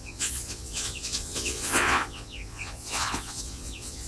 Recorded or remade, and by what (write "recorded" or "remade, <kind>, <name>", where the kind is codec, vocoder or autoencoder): remade, vocoder, Vocos